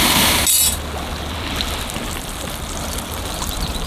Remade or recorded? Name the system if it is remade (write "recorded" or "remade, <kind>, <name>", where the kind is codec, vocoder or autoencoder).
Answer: remade, vocoder, BigVGAN v2